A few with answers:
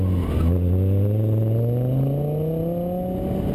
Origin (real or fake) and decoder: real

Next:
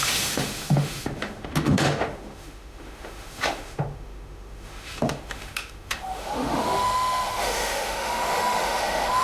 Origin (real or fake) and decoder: fake, autoencoder, DAC-VAE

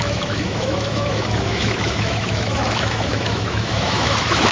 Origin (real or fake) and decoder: fake, autoencoder, DAC-VAE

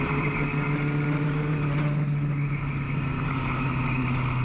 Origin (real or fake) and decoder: real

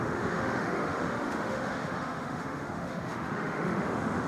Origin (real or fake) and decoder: fake, autoencoder, DAC-VAE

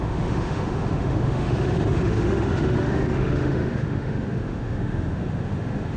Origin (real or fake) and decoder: fake, autoencoder, DAC-VAE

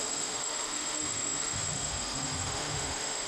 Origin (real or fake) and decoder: fake, autoencoder, DAC-VAE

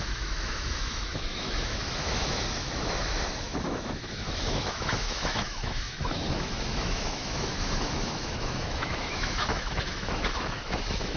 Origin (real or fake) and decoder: fake, autoencoder, DAC-VAE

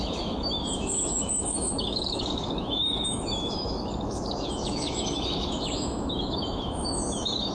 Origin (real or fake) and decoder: fake, autoencoder, DAC-VAE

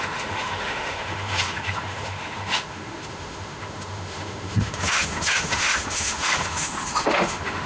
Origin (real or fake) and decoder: fake, autoencoder, DAC-VAE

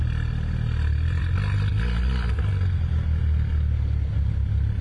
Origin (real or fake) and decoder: real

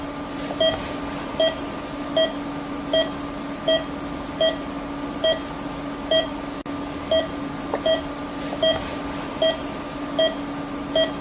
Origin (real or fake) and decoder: real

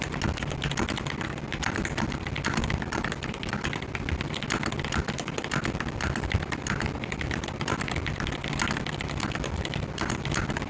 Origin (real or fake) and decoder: real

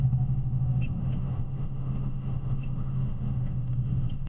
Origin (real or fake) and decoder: fake, autoencoder, DAC-VAE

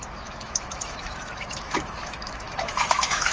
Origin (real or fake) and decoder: fake, autoencoder, DAC-VAE